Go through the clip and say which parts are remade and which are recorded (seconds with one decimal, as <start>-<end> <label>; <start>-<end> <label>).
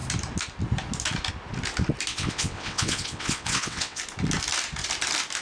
0.0-2.1 recorded; 2.1-4.0 remade; 4.0-5.4 recorded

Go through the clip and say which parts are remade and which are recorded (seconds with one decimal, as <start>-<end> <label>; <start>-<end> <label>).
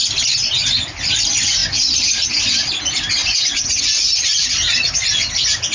0.0-3.2 recorded; 3.2-3.8 remade; 3.8-5.7 recorded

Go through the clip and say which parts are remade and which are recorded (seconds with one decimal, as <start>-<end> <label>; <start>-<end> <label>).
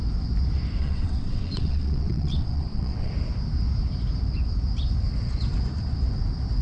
0.0-0.8 recorded; 0.8-3.1 remade; 3.1-6.6 recorded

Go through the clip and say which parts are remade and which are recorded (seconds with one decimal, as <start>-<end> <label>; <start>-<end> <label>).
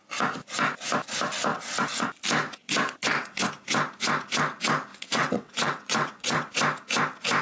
0.0-1.5 recorded; 1.5-2.1 remade; 2.1-2.6 recorded; 2.6-3.4 remade; 3.4-4.9 recorded; 4.9-6.5 remade; 6.5-7.4 recorded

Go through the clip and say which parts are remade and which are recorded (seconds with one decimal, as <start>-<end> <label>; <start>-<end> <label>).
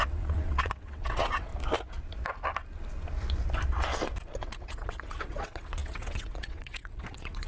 0.0-1.5 remade; 1.5-4.4 recorded; 4.4-7.5 remade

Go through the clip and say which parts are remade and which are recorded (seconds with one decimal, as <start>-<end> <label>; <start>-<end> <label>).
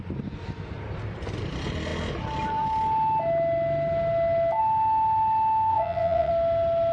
0.0-5.7 recorded; 5.7-6.3 remade; 6.3-6.9 recorded